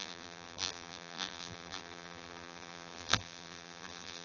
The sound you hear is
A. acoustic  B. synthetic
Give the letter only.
B